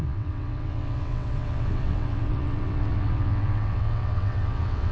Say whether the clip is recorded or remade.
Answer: remade